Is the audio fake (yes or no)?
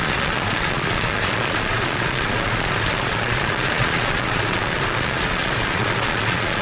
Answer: yes